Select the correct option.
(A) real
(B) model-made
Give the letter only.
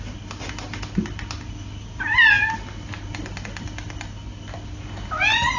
A